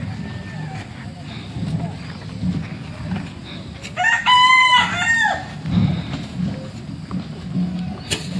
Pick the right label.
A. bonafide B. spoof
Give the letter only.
A